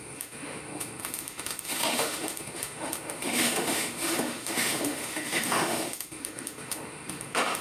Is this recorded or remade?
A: remade